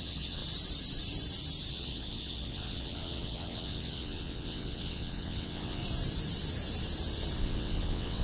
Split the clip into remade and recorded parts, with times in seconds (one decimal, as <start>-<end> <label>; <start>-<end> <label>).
0.0-0.4 remade; 0.4-1.7 recorded; 1.7-5.8 remade; 5.8-7.4 recorded; 7.4-8.2 remade